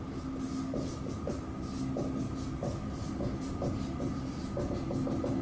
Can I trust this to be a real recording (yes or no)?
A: yes